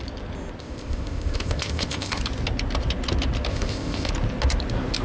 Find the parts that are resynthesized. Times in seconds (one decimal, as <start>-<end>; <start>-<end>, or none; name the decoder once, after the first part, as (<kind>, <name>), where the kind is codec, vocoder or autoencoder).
0.6-2.2 (codec, ZipCodec); 3.5-4.1